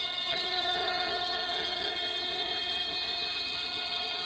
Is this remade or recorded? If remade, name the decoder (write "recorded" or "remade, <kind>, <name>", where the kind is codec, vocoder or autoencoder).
remade, vocoder, HiFi-GAN